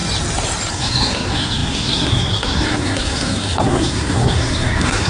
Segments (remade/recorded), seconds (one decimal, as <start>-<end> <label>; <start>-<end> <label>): 0.0-0.7 recorded; 0.7-5.1 remade